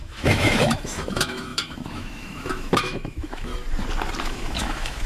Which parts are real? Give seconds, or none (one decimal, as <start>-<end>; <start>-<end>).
3.5-4.2